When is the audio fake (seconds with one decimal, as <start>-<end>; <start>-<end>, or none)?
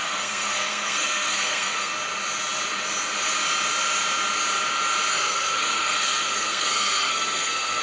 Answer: 0.0-1.9; 5.1-7.8